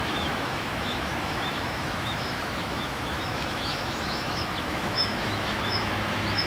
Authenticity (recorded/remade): remade